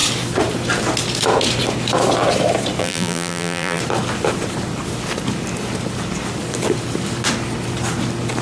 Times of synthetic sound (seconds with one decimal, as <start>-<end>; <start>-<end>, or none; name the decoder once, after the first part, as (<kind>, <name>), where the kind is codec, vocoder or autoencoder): 2.8-3.8 (vocoder, BigVGAN v2)